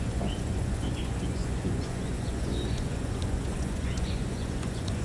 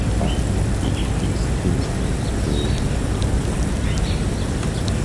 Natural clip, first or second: second